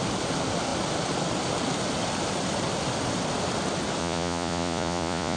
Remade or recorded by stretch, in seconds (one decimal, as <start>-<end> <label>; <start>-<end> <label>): 0.0-4.0 recorded; 4.0-5.4 remade